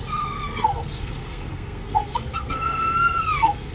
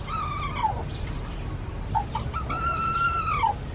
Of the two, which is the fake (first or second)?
first